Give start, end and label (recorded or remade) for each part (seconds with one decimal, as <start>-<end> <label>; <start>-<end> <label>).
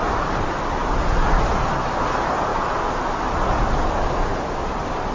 0.0-5.1 recorded